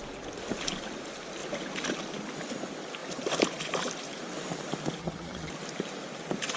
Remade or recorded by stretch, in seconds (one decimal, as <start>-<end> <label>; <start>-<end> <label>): 0.0-5.0 recorded; 5.0-5.5 remade; 5.5-6.6 recorded